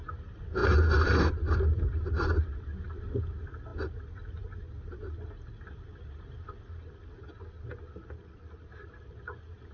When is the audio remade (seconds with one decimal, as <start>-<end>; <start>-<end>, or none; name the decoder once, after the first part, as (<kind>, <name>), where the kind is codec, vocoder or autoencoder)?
none